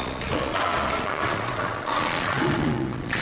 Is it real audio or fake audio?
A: fake